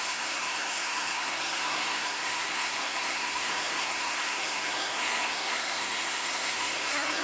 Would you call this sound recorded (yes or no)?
no